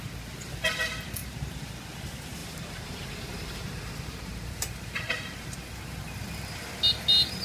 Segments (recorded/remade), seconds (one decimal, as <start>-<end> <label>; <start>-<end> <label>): 0.0-1.2 recorded; 1.2-1.7 remade; 1.7-2.4 recorded; 2.4-6.8 remade; 6.8-7.4 recorded